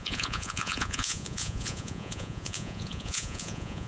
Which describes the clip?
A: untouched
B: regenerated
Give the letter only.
B